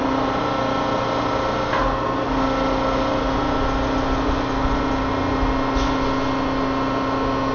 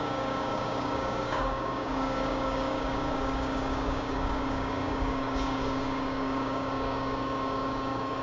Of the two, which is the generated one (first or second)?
second